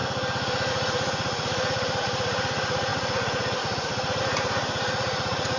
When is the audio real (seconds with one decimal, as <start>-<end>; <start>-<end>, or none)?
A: 0.0-0.7